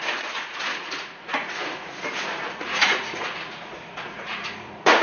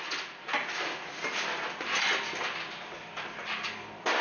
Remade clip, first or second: first